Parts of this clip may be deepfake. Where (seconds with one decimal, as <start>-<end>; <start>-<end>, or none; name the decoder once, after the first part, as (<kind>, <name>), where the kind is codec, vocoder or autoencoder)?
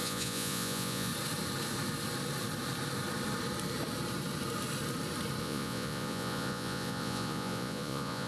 0.0-1.1 (vocoder, Vocos); 5.4-8.3